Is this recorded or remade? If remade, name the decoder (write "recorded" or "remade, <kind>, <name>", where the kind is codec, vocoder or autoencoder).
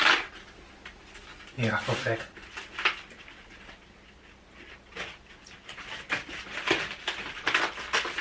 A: recorded